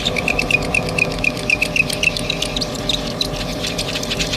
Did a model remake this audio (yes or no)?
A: yes